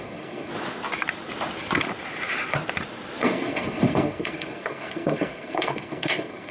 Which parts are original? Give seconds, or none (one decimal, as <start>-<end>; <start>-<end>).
0.5-3.2